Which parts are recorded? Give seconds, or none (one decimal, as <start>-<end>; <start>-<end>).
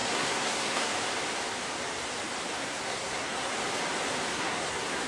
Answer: 0.9-2.6; 3.5-4.3